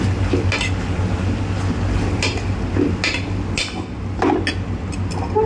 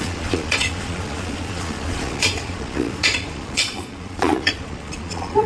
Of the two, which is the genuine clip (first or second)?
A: first